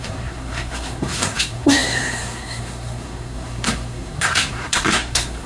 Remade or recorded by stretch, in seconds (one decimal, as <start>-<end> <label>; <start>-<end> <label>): 0.0-5.5 remade